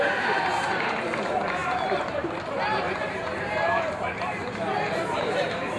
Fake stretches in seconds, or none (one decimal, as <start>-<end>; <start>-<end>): 0.0-4.4; 5.2-5.8